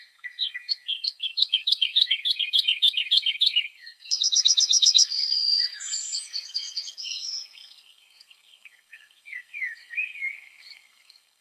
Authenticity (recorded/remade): remade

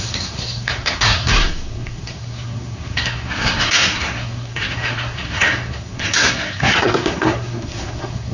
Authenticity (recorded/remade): remade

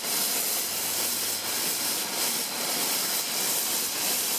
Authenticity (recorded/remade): recorded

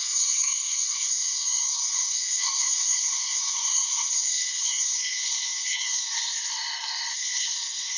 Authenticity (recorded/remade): remade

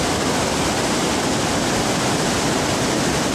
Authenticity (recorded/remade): recorded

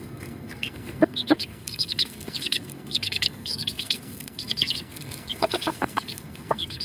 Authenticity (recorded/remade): remade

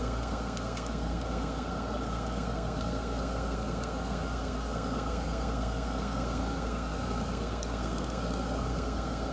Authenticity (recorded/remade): remade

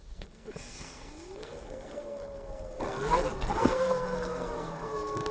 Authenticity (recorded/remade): remade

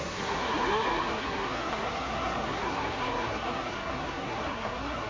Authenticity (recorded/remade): remade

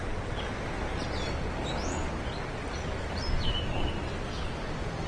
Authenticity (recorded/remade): recorded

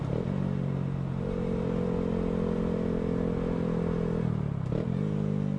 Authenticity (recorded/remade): recorded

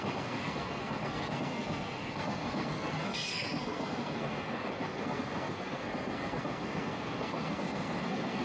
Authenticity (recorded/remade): remade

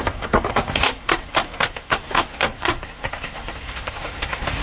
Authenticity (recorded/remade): remade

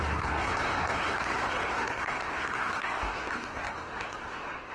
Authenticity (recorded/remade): remade